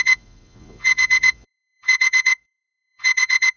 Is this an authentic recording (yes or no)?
no